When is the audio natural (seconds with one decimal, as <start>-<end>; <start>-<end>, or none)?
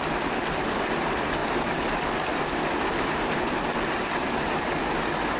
0.0-5.4